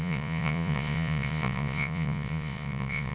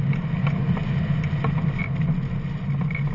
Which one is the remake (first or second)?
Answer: first